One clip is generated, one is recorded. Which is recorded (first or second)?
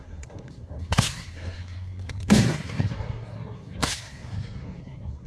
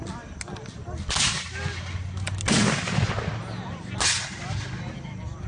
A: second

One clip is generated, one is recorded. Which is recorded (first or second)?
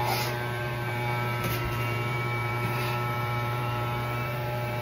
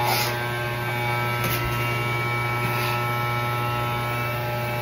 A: second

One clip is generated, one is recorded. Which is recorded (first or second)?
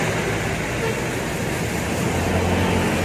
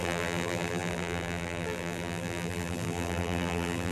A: first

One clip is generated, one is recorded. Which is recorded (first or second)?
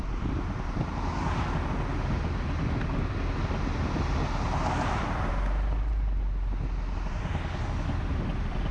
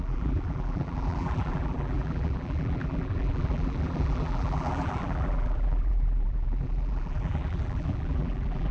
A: first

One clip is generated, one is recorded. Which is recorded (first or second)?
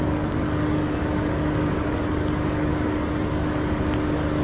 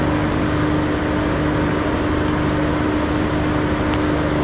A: second